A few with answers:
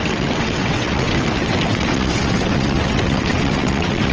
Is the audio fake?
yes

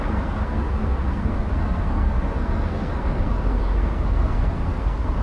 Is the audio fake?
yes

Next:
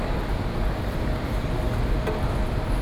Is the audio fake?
no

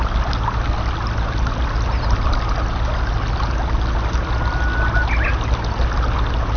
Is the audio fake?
no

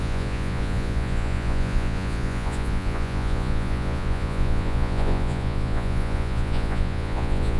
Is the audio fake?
yes